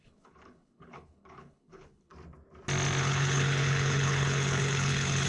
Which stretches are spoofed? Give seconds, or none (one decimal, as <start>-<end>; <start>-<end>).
0.0-2.1; 3.0-5.3